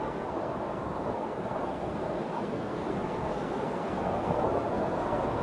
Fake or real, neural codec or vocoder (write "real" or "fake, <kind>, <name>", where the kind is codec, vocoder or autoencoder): fake, codec, SNAC